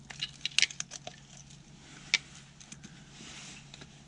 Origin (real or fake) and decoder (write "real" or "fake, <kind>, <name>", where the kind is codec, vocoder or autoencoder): real